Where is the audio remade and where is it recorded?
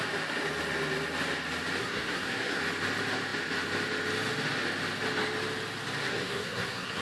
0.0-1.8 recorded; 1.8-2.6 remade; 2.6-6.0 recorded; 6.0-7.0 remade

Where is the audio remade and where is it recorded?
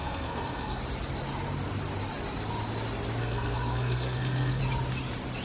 0.0-0.8 remade; 0.8-3.2 recorded; 3.2-4.6 remade; 4.6-5.4 recorded